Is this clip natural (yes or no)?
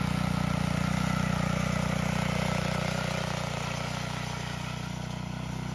yes